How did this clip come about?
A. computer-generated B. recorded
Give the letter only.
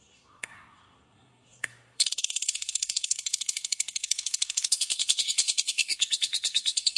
A